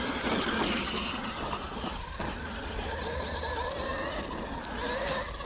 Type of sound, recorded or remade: recorded